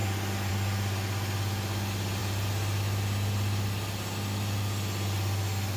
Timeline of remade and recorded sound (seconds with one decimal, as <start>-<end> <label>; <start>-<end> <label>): 0.0-5.8 recorded